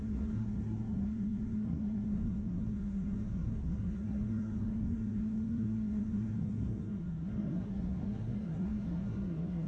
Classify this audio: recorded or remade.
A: remade